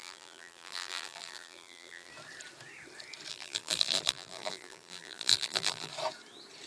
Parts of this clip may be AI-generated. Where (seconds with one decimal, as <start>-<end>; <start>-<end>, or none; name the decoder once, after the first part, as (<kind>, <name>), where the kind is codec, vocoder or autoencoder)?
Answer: 0.0-2.1 (vocoder, BigVGAN v2); 3.3-5.9